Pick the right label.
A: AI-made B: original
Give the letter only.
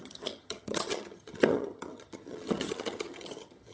A